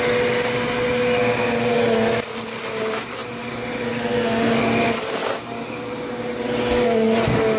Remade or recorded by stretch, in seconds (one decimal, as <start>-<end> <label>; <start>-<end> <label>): 0.0-7.6 recorded